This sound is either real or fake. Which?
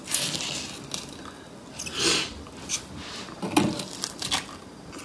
real